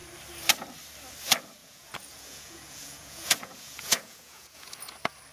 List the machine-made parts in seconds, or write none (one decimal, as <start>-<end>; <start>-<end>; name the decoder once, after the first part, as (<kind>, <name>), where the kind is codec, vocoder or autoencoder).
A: 1.6-4.8 (vocoder, Vocos)